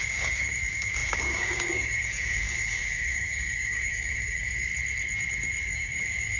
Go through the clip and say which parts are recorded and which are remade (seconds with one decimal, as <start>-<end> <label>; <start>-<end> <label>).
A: 0.0-4.7 remade; 4.7-5.6 recorded; 5.6-6.4 remade

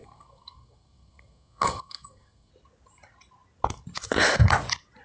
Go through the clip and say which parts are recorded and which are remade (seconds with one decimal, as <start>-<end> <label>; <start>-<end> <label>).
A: 0.0-2.5 remade; 2.5-5.0 recorded

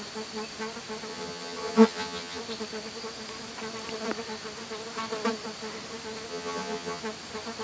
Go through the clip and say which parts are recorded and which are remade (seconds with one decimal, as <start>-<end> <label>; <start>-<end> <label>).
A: 0.0-1.1 recorded; 1.1-2.4 remade; 2.4-6.3 recorded; 6.3-7.0 remade; 7.0-7.6 recorded

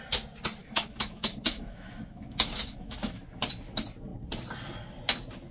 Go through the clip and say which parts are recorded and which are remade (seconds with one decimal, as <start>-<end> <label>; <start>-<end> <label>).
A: 0.0-0.6 recorded; 0.6-3.2 remade; 3.2-5.5 recorded

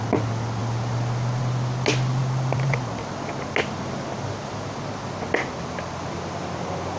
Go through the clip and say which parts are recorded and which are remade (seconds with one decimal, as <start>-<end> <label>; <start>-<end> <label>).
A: 0.0-2.2 recorded; 2.2-2.8 remade; 2.8-7.0 recorded

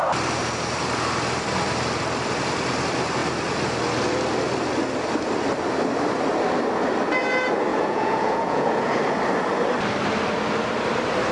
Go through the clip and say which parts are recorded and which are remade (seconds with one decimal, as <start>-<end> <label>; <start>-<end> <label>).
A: 0.0-7.7 recorded; 7.7-9.0 remade; 9.0-11.3 recorded

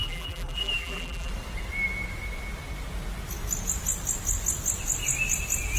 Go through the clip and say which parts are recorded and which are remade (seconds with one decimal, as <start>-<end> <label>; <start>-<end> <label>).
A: 0.0-1.3 remade; 1.3-5.8 recorded